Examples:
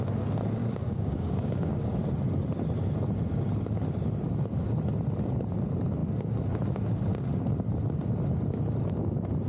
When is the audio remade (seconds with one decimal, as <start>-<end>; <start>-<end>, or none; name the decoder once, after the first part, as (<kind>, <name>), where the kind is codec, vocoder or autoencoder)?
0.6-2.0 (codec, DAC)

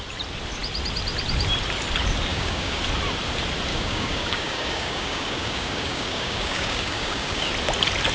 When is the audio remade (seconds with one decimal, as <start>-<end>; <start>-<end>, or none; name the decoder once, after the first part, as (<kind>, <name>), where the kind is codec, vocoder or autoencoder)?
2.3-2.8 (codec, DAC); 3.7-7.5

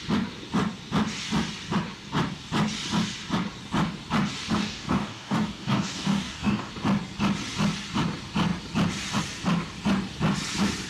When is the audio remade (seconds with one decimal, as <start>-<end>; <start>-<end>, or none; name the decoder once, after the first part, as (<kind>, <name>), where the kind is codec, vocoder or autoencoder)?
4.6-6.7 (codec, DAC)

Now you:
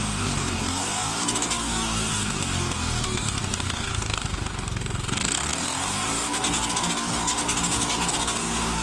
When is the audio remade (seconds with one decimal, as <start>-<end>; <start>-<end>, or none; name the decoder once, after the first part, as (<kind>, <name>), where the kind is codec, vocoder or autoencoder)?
0.0-8.8 (codec, DAC)

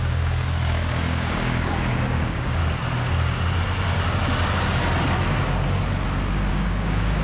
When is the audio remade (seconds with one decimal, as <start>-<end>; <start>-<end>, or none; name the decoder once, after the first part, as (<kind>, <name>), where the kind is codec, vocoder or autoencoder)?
0.0-2.6 (codec, DAC); 6.5-7.2

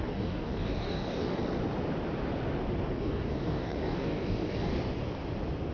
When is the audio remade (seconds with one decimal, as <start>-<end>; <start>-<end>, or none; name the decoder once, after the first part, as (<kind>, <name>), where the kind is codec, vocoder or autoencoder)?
0.0-1.4 (codec, DAC); 2.9-4.7